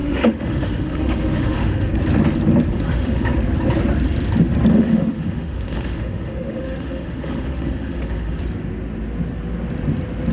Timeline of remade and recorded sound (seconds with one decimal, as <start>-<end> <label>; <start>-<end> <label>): 0.0-1.9 remade; 1.9-2.7 recorded; 2.7-3.3 remade; 3.3-4.7 recorded; 4.7-8.4 remade; 8.4-10.3 recorded